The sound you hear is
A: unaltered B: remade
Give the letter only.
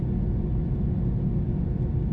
A